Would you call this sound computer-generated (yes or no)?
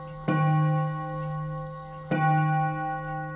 no